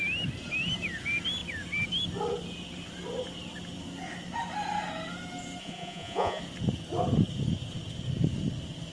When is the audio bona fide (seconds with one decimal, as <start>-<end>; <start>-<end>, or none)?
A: 0.0-5.6; 6.4-8.9